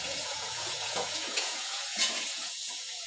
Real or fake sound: fake